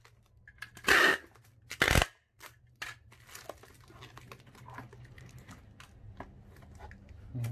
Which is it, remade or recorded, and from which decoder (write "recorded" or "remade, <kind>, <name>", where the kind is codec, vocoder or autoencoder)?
recorded